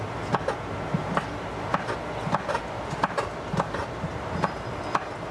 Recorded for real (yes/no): yes